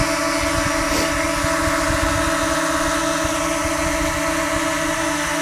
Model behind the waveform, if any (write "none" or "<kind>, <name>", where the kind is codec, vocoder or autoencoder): none